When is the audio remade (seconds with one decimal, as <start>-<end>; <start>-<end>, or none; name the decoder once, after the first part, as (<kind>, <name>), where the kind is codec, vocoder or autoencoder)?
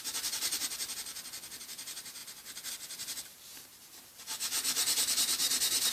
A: 0.0-1.1 (vocoder, BigVGAN v2); 1.6-2.2; 2.7-5.9